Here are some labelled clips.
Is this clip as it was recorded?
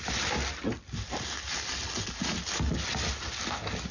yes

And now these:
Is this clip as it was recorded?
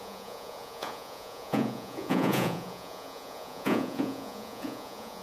no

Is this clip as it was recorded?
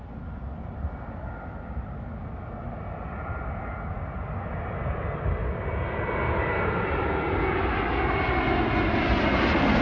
yes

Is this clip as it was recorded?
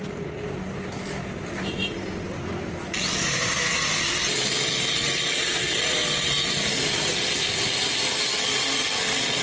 yes